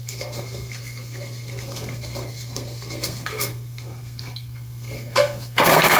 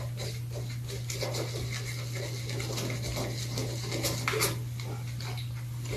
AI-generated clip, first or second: first